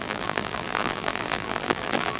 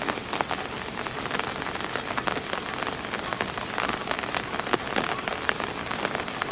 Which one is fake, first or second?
first